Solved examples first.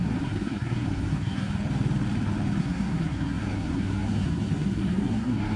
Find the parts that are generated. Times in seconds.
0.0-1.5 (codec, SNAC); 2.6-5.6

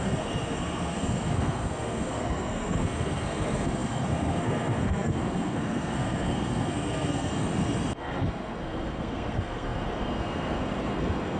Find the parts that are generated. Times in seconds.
0.0-7.3 (codec, SNAC); 8.0-11.4

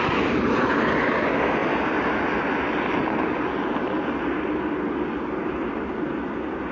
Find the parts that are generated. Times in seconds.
none

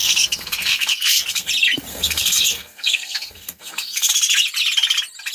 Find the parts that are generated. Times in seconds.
0.0-1.5 (codec, SNAC); 1.9-4.1

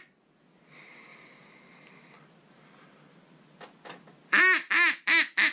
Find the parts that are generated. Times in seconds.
none

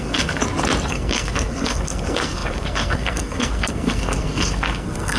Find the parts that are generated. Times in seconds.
0.0-0.4 (codec, SNAC); 0.9-5.2

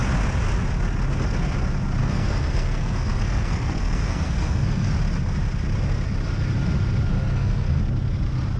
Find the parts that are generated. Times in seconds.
2.0-4.9 (codec, SNAC); 7.1-7.8

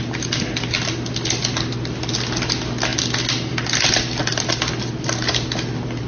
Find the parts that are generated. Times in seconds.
none